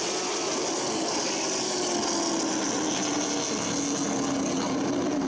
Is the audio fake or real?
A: real